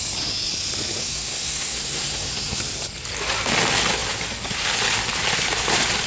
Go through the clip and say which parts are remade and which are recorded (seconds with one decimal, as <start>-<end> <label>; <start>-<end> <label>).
0.0-1.0 recorded; 1.0-2.6 remade; 2.6-6.1 recorded